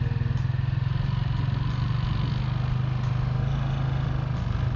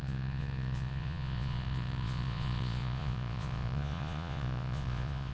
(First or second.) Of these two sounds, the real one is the first